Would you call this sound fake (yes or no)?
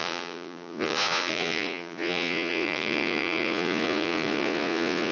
yes